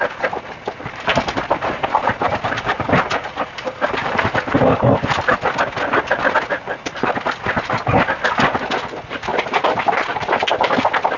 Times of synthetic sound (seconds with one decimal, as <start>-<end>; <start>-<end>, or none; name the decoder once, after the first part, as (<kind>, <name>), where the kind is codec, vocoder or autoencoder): 1.1-5.1 (vocoder, BigVGAN v2)